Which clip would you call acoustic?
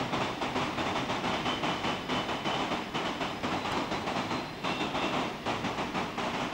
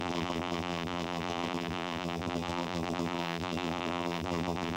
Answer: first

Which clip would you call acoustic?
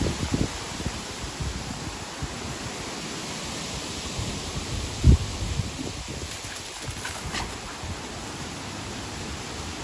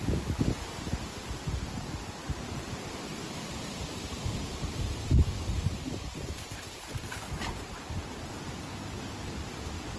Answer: first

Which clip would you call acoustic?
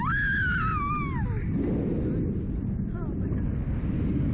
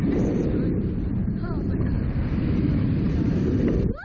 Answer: first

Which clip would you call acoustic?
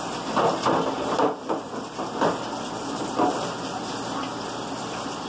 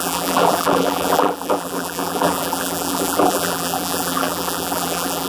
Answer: first